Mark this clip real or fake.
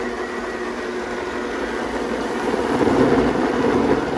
real